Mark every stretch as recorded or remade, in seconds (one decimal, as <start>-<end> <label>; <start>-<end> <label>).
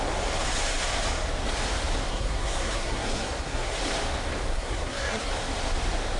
0.0-2.1 recorded; 2.1-3.8 remade; 3.8-4.5 recorded; 4.5-5.3 remade; 5.3-6.2 recorded